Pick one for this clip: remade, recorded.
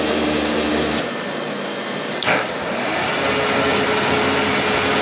recorded